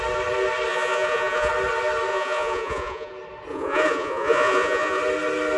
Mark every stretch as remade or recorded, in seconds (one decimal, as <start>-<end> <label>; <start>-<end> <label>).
0.0-0.7 recorded; 0.7-1.5 remade; 1.5-2.1 recorded; 2.1-3.1 remade; 3.1-3.5 recorded; 3.5-5.0 remade; 5.0-5.6 recorded